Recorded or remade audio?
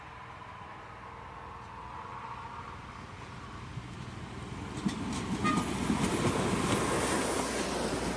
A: recorded